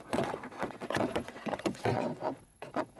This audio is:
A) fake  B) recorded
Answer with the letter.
A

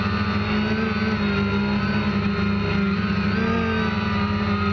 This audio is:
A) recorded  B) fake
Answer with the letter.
A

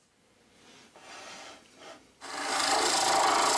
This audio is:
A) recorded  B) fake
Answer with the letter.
A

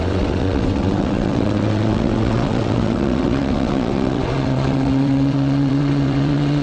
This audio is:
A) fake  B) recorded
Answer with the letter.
A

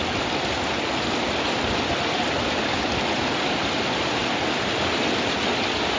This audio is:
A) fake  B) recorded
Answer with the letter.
B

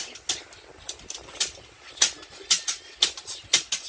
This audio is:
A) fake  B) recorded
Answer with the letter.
B